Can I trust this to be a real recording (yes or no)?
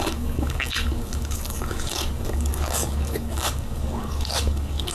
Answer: no